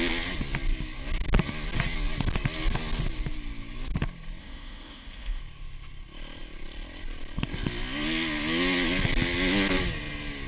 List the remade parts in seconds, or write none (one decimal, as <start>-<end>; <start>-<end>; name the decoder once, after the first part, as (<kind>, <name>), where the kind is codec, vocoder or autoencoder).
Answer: 4.4-5.4 (codec, ZipCodec)

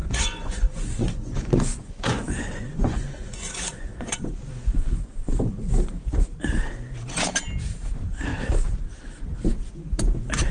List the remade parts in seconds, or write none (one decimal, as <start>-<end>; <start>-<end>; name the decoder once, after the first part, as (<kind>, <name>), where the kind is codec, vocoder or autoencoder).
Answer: 0.0-5.3 (vocoder, Vocos)

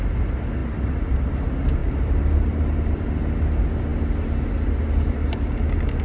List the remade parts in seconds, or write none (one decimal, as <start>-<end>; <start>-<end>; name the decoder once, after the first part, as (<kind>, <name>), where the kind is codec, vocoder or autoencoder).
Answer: 0.6-1.3 (vocoder, BigVGAN v2); 1.8-3.1

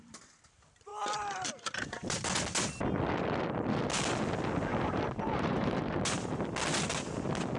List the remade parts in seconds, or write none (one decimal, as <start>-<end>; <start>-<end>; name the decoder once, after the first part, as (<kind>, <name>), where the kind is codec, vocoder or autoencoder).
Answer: 4.7-5.8 (vocoder, BigVGAN v2)

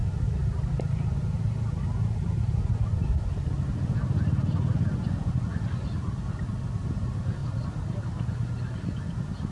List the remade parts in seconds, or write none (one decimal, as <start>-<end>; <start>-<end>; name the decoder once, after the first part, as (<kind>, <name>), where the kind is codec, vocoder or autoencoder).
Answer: 7.4-8.0 (vocoder, BigVGAN v2)